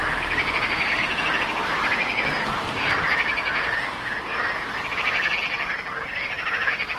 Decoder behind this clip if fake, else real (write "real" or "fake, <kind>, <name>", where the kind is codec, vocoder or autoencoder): real